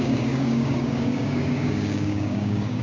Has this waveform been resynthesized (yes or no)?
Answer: yes